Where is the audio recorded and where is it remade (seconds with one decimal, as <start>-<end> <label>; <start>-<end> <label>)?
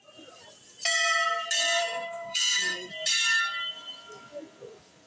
0.0-1.8 recorded; 1.8-2.9 remade; 2.9-5.1 recorded